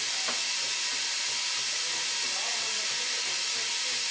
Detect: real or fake real